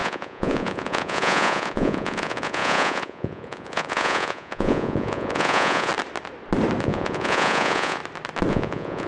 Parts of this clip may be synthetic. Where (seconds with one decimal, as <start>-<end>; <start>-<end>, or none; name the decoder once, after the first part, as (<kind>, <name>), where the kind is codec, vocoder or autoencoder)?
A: 0.0-5.9 (vocoder, Vocos); 6.8-8.0; 8.5-9.1